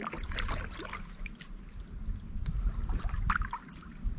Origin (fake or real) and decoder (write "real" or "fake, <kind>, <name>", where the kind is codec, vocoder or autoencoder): real